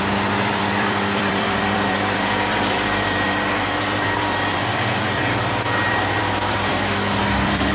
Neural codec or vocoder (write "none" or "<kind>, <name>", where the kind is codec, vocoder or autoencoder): vocoder, BigVGAN v2